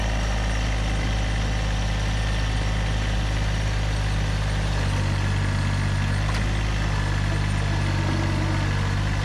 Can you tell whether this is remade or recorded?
recorded